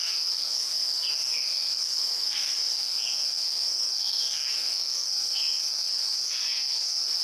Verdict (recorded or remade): remade